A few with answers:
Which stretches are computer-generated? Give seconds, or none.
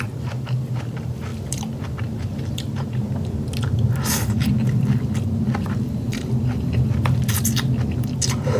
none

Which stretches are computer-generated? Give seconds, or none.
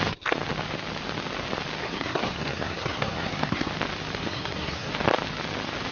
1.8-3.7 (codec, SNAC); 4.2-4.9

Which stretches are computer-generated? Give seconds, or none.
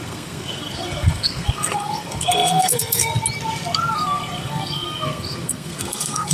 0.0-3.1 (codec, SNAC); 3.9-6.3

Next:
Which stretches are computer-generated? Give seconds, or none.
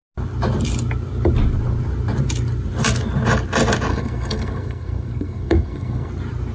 3.9-6.1 (codec, SNAC)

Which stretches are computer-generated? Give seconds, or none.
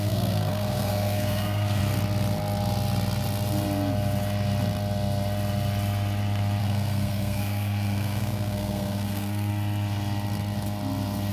0.0-1.8 (codec, SNAC); 6.6-9.5